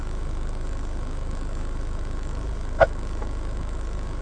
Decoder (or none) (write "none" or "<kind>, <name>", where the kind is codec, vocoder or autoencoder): autoencoder, DAC-VAE